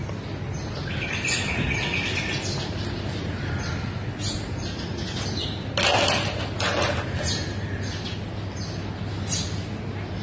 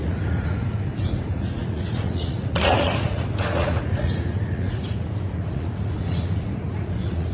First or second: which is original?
first